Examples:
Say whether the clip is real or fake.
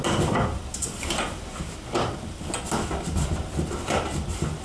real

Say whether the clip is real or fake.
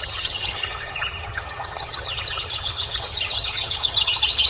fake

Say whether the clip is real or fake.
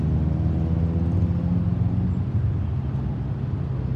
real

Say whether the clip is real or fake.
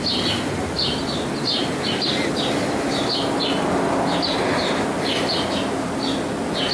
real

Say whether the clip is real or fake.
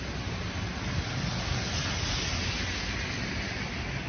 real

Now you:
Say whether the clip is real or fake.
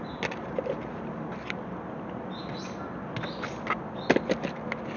real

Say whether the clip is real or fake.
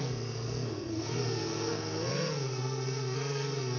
fake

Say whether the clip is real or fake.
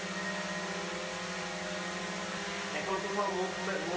real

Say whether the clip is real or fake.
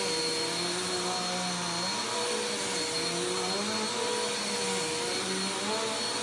real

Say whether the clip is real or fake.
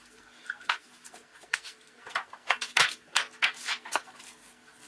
fake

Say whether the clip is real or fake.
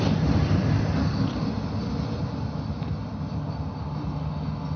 real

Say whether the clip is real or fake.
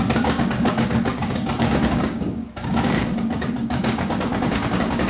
fake